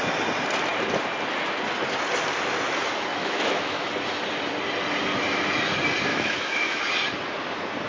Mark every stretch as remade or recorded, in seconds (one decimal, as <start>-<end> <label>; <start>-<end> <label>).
0.0-3.1 recorded; 3.1-3.9 remade; 3.9-6.1 recorded; 6.1-6.8 remade; 6.8-7.9 recorded